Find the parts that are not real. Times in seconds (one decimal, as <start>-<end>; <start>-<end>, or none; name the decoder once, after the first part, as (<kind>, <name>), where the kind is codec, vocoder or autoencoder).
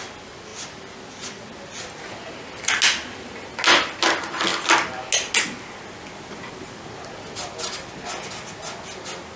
none